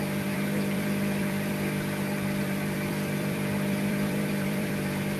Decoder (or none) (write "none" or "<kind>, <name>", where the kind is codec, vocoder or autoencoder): vocoder, BigVGAN v2